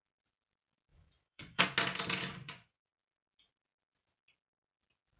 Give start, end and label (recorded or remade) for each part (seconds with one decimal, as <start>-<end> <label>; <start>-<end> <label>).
0.0-0.9 recorded; 0.9-1.6 remade; 1.6-2.3 recorded; 2.3-2.9 remade; 2.9-5.2 recorded